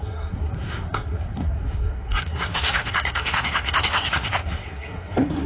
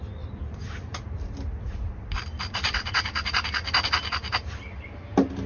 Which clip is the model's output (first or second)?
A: first